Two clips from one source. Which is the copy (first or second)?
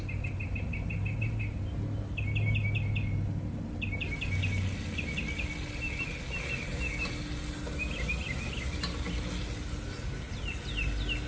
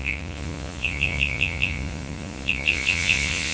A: second